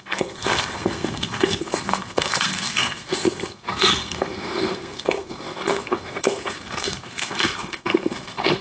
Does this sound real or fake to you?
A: fake